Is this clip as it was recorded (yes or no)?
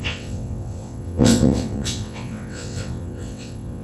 no